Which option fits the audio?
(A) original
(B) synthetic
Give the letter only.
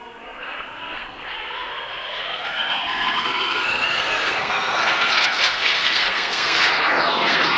B